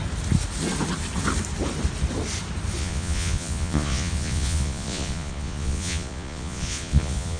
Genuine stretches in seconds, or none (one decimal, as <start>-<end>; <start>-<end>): 0.0-2.8